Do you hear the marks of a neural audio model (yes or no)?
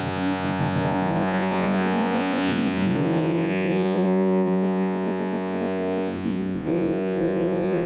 yes